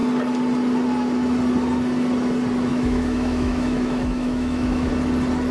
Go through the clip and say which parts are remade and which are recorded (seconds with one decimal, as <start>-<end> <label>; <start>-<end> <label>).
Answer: 0.0-2.7 recorded; 2.7-4.9 remade; 4.9-5.5 recorded